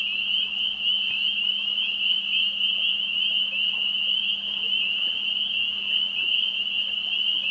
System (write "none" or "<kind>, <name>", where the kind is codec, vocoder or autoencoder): none